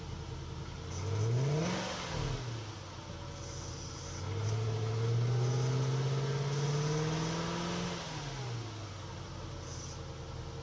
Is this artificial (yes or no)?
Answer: no